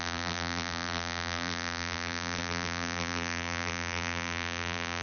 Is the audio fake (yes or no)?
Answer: yes